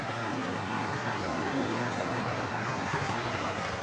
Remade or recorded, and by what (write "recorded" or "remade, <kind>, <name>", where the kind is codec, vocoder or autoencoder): remade, codec, SNAC